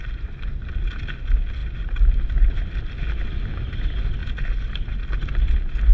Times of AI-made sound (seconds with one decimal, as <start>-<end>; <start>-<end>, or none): none